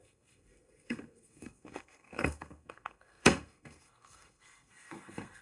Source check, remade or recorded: remade